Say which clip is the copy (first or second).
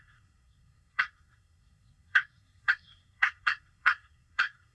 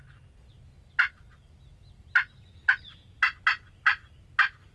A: first